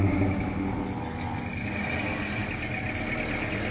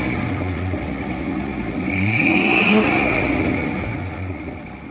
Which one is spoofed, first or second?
second